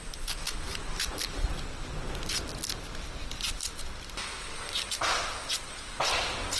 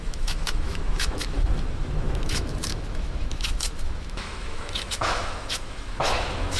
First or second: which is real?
first